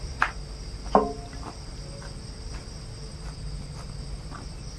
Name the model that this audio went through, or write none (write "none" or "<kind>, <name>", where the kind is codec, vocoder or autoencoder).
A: none